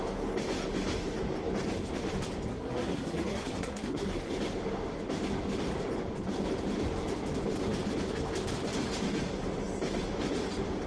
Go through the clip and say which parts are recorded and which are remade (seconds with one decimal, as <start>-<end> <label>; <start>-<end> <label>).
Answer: 0.0-2.5 recorded; 2.5-4.3 remade; 4.3-10.9 recorded